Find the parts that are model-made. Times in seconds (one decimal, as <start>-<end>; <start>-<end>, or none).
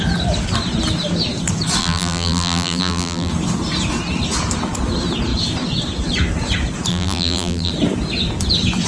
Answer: 1.8-3.3; 6.9-7.7